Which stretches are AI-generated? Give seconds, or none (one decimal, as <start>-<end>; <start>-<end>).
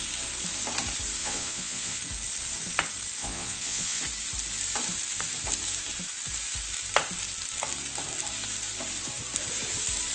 1.2-2.0; 3.2-4.0